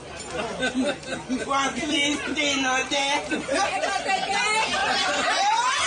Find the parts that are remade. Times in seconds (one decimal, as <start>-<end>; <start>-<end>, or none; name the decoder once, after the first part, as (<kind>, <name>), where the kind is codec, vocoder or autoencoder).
4.8-5.4 (vocoder, BigVGAN v2)